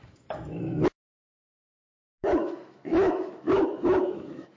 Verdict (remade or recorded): remade